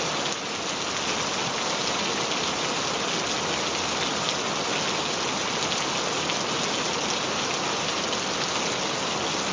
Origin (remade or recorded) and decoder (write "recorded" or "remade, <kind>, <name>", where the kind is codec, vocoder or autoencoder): recorded